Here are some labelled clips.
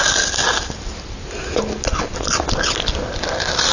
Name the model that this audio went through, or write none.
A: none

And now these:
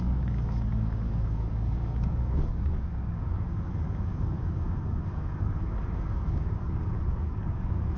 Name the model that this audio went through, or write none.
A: codec, DAC